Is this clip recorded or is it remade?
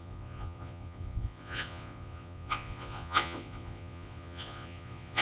remade